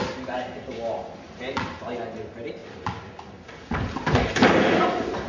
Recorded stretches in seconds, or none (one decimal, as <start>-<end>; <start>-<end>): 0.0-5.3